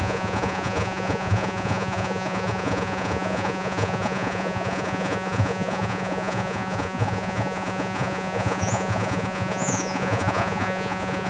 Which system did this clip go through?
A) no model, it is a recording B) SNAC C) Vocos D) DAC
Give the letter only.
C